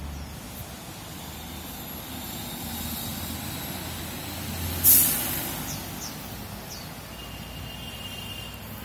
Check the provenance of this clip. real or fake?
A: real